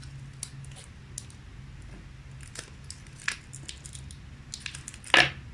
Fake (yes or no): no